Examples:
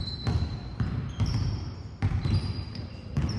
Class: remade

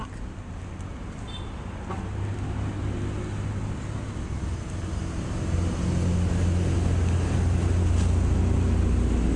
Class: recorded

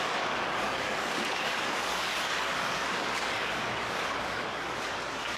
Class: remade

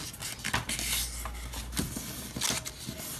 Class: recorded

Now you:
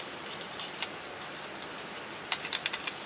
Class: recorded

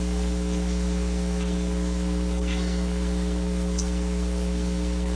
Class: remade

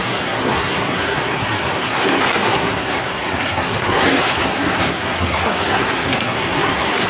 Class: remade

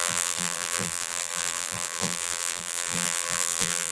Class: remade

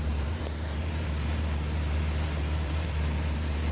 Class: remade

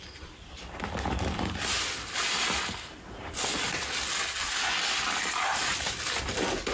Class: remade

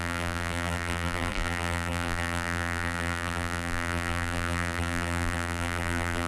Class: remade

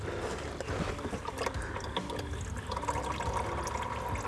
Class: recorded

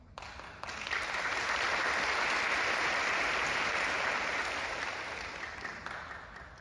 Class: recorded